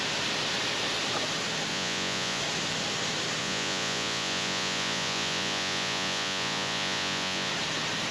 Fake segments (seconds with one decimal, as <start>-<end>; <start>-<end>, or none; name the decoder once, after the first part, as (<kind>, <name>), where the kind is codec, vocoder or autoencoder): 1.7-2.4 (vocoder, Vocos); 3.4-7.5